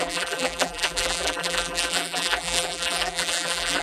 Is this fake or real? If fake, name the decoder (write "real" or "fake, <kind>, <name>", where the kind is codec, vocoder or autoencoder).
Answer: fake, vocoder, BigVGAN v2